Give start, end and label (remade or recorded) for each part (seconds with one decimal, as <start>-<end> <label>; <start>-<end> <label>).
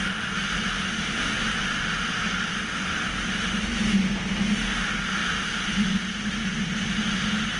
0.0-7.6 recorded